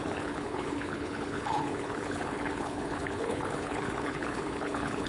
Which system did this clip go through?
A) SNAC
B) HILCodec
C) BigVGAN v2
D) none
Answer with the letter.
B